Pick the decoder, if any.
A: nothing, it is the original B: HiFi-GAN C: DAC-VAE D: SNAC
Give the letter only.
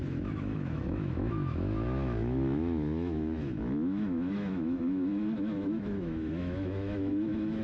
C